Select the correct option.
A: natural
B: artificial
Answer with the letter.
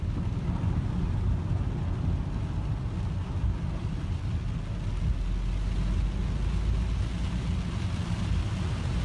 A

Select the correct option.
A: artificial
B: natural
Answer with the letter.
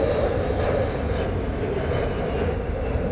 A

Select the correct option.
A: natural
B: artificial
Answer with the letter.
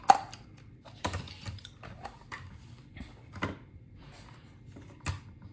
B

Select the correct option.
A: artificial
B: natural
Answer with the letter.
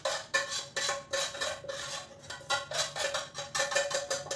B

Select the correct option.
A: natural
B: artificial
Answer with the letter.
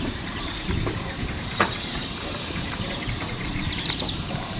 B